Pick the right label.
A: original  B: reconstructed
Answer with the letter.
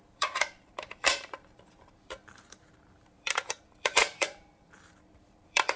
B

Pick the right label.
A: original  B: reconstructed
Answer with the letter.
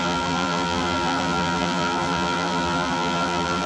B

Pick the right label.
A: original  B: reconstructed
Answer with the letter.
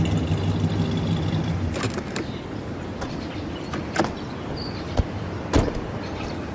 A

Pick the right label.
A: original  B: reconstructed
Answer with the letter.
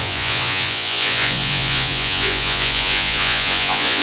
B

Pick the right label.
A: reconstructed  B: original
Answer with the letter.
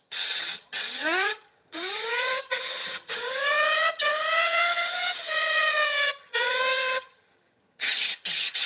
A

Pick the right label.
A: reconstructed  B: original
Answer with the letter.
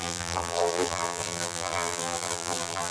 A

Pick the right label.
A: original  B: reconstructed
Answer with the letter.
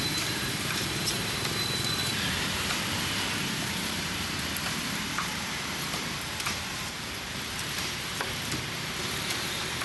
B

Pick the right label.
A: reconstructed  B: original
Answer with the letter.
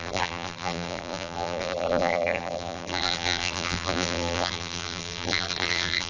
A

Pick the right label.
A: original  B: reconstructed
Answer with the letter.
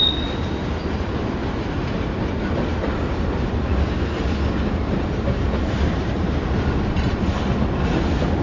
A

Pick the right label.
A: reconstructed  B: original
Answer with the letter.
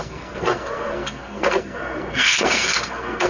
A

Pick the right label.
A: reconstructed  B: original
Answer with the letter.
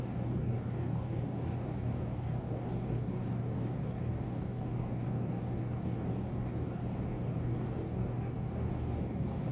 A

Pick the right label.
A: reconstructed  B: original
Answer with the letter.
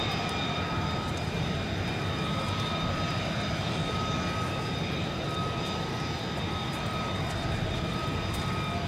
B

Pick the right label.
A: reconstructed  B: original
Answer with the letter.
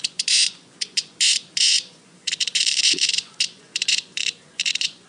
A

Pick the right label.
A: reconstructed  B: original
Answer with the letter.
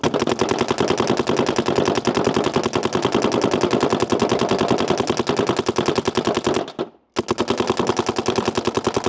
B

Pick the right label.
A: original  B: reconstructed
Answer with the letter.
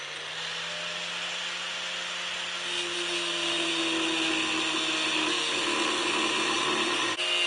A